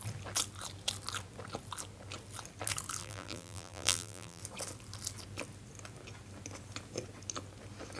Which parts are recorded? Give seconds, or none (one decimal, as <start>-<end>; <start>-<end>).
0.0-3.0; 4.4-8.0